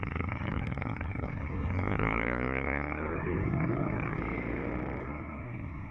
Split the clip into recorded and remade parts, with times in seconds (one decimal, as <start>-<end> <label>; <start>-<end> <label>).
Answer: 0.0-4.2 remade; 4.2-5.0 recorded; 5.0-5.9 remade